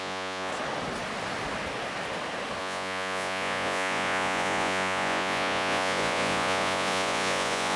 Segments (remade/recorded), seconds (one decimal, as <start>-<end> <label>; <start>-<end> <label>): 0.0-0.5 remade; 0.5-2.6 recorded; 2.6-7.8 remade